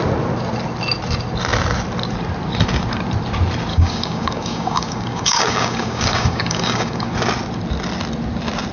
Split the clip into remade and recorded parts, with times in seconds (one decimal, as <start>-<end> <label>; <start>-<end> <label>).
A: 0.0-3.7 recorded; 3.7-7.1 remade; 7.1-8.7 recorded